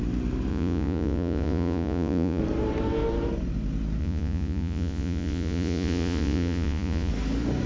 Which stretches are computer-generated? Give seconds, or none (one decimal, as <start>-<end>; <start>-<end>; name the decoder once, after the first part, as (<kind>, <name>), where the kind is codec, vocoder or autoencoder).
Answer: 0.5-2.4 (vocoder, Vocos); 4.0-7.1